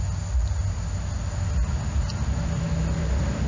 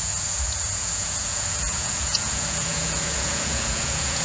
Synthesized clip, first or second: second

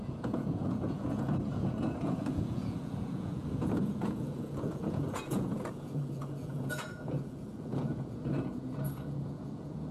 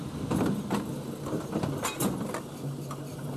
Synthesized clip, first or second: first